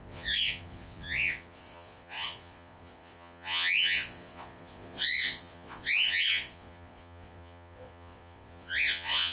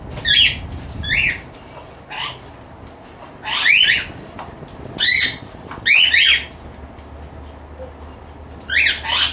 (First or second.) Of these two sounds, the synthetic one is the first